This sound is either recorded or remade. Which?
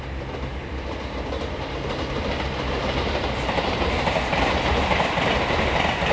recorded